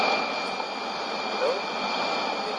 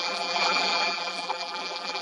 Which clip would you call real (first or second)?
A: first